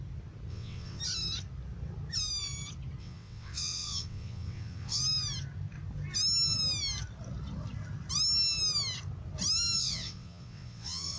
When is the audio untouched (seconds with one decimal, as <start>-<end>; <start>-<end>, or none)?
0.0-0.5; 1.0-3.0; 5.0-9.8